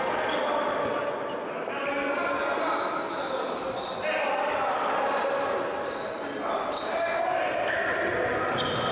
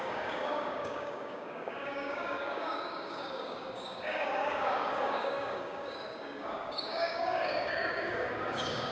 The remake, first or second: second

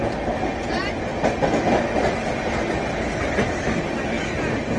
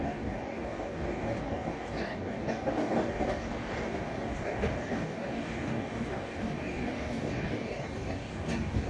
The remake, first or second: second